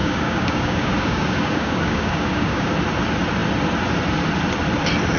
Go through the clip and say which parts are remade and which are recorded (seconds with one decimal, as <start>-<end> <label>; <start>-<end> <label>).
0.0-2.7 remade; 2.7-5.2 recorded

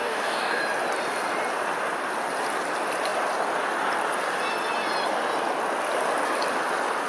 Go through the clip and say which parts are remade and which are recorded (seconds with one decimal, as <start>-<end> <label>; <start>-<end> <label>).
0.0-0.6 remade; 0.6-7.1 recorded

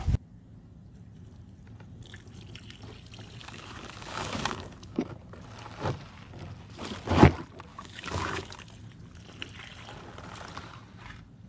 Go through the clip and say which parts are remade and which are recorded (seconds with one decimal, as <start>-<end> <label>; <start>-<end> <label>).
0.0-3.4 recorded; 3.4-5.0 remade; 5.0-7.7 recorded; 7.7-8.5 remade; 8.5-11.5 recorded

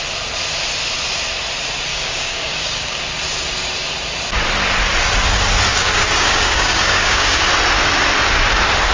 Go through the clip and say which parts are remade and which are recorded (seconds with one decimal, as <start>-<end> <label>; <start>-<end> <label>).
0.0-1.9 recorded; 1.9-3.0 remade; 3.0-5.7 recorded; 5.7-7.4 remade; 7.4-8.9 recorded